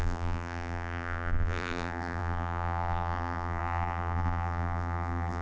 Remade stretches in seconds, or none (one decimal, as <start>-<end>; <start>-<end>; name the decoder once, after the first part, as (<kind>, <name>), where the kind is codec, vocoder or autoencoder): 0.0-5.4 (vocoder, BigVGAN v2)